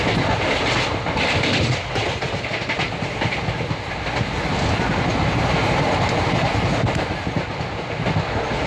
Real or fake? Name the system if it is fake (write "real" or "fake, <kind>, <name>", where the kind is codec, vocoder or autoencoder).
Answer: real